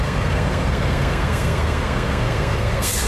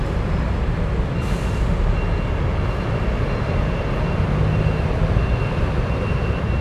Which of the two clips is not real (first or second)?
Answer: first